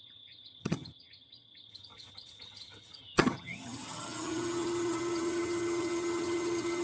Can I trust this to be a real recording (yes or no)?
no